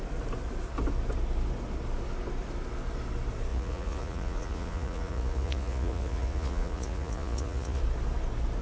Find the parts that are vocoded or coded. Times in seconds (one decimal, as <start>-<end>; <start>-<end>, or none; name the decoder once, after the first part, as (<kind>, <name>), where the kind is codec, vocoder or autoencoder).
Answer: 3.5-7.8 (vocoder, Vocos)